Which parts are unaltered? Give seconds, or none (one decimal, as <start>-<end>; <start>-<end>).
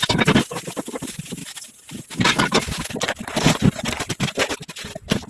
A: 0.0-5.3